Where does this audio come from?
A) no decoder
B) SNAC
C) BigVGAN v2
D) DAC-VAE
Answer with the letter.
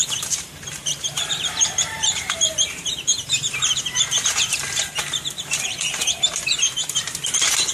C